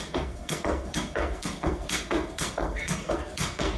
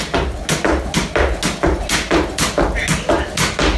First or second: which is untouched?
second